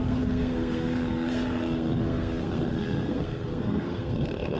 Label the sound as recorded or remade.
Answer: remade